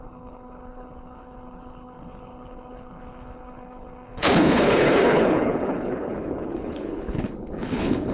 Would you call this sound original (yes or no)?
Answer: no